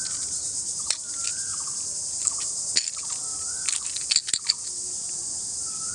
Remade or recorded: recorded